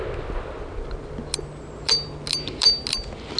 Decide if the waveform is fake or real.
real